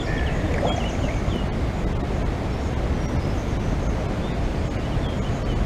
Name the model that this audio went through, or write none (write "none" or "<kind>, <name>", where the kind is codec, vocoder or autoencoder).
none